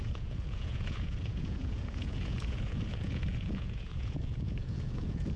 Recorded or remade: remade